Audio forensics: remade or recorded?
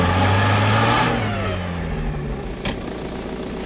recorded